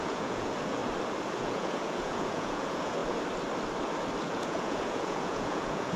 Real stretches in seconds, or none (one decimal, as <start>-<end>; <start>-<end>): 0.8-1.4; 3.0-4.2

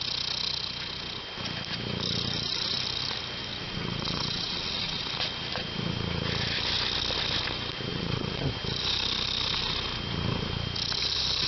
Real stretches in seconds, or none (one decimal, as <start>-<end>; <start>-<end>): 0.0-3.5; 5.0-7.9; 8.5-11.5

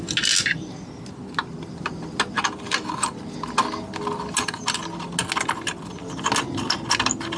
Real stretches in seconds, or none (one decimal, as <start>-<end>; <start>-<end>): 0.0-7.4

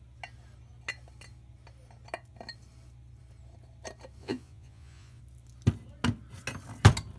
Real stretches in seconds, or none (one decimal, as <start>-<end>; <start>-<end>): 0.0-4.2; 5.2-7.2

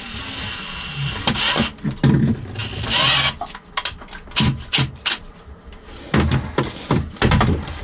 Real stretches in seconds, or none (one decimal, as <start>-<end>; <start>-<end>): 0.0-7.8

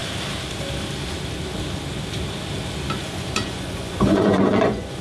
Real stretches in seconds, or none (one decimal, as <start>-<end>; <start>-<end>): 0.0-3.0

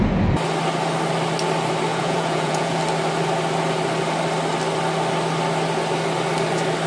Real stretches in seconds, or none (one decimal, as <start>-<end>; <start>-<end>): 0.0-1.9; 2.8-6.9